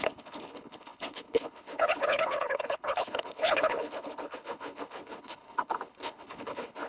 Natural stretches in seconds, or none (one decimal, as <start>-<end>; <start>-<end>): none